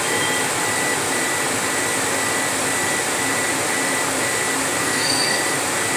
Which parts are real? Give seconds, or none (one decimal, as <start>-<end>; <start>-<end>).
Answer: 0.0-4.8; 5.4-6.0